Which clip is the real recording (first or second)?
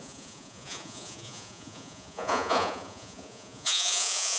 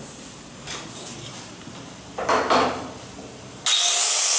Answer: second